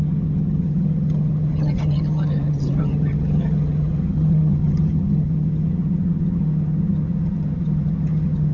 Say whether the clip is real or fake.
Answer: fake